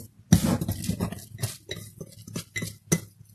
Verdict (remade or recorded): recorded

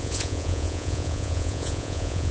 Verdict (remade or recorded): remade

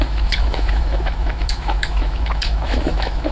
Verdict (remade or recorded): remade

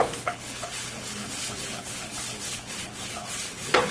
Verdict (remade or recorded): remade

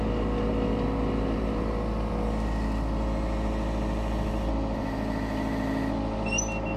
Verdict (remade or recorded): recorded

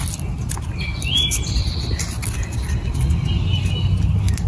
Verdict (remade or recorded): recorded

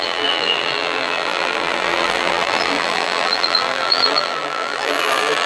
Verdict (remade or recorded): remade